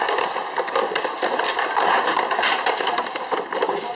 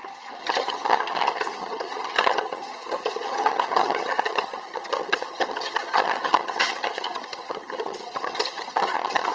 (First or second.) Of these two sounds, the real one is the first